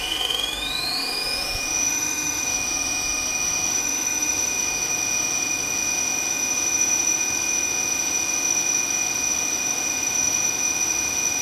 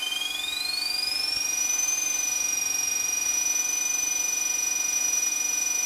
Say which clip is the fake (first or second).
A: first